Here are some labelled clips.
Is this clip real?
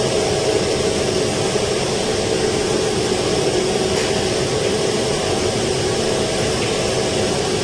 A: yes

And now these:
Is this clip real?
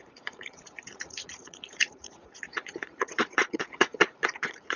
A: no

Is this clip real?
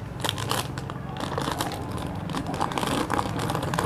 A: yes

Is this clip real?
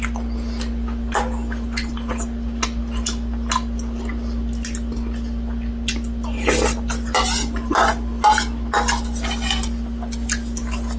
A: yes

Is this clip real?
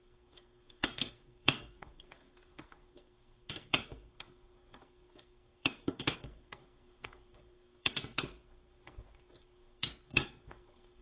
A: no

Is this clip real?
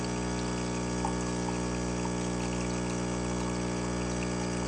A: yes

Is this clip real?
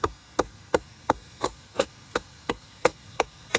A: no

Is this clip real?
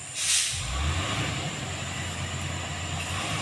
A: yes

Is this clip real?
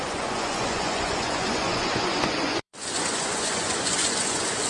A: no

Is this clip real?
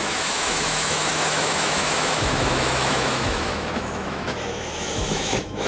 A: no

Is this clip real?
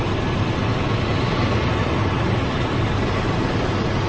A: yes